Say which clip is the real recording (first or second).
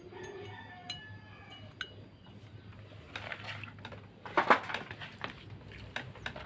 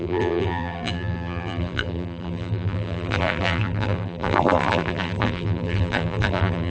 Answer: first